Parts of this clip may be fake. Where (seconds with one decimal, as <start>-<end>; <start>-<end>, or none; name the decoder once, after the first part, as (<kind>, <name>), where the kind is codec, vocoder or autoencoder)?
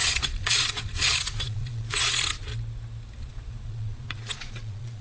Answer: 0.0-2.5 (vocoder, Vocos); 3.2-5.0